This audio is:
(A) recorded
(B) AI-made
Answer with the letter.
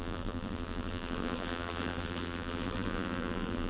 B